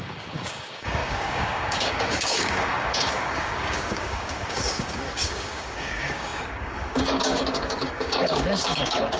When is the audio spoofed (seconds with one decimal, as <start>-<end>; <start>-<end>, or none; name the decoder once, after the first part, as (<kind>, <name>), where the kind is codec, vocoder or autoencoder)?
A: 0.0-9.2 (codec, DAC)

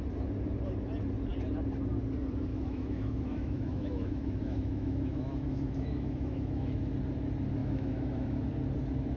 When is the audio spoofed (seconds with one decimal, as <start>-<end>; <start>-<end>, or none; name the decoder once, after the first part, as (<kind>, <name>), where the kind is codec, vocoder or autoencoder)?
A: 2.5-6.9 (autoencoder, DAC-VAE); 7.6-8.5

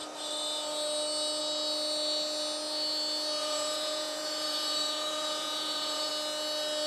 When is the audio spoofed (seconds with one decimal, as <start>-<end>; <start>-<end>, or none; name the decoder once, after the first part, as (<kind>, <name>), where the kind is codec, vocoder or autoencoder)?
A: 3.4-6.1 (vocoder, Vocos)

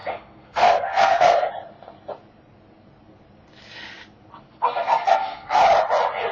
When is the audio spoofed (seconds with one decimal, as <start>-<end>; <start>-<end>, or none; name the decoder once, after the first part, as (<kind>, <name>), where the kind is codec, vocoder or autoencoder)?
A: 0.0-1.5 (codec, SNAC); 4.5-5.6

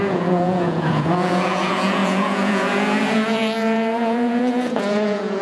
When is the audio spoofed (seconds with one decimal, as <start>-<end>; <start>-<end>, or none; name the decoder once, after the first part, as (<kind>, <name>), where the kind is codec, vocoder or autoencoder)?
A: 0.0-5.4 (vocoder, Vocos)

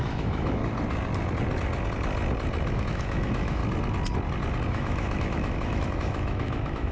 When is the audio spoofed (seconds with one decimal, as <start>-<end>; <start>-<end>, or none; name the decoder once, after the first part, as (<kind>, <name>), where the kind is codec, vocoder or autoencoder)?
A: 0.0-0.6 (autoencoder, DAC-VAE); 2.7-3.6; 4.7-6.9